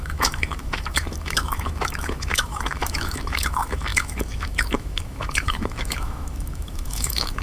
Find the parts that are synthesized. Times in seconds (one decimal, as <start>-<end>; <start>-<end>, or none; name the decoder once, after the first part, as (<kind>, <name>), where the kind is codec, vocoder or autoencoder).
0.0-7.4 (autoencoder, DAC-VAE)